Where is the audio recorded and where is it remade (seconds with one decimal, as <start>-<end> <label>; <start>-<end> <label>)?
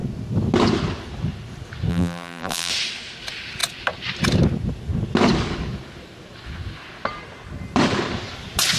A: 0.0-1.9 recorded; 1.9-2.7 remade; 2.7-8.8 recorded